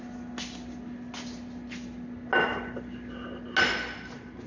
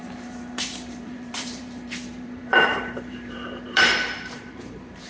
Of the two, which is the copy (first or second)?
second